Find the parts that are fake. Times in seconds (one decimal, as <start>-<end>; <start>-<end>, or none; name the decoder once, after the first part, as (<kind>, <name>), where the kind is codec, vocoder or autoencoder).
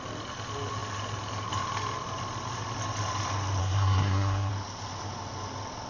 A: 3.6-4.5 (codec, SNAC)